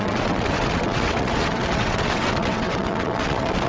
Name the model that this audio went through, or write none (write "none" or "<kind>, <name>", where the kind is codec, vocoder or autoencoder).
vocoder, WaveNeXt